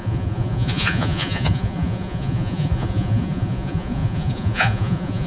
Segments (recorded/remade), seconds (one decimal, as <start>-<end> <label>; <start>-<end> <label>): 0.0-5.3 remade